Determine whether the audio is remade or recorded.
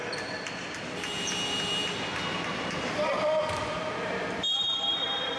remade